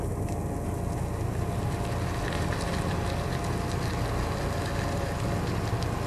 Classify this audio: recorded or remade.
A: recorded